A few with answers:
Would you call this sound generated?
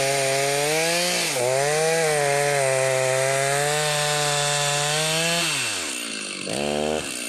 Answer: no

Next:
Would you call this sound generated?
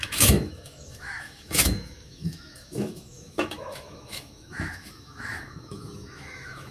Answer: yes